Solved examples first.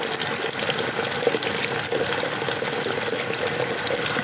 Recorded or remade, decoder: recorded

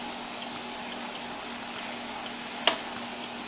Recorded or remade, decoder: recorded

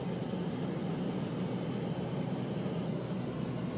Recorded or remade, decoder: recorded